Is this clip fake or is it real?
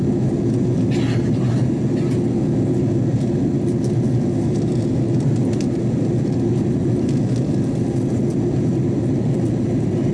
real